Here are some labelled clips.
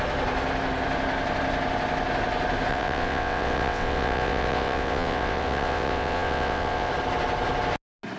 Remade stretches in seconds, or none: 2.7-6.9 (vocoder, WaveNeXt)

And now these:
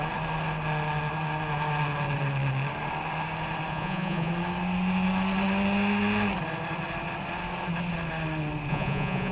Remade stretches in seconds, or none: 3.7-4.3 (vocoder, Vocos); 8.7-9.3